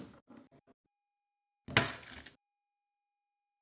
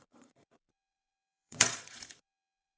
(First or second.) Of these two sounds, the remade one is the second